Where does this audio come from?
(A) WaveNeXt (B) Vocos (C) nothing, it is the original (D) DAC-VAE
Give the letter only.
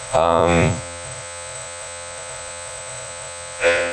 B